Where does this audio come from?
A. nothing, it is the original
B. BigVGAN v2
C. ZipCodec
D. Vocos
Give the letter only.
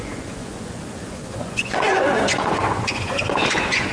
D